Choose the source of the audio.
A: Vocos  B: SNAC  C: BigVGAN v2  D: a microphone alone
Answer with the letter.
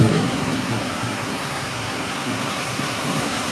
B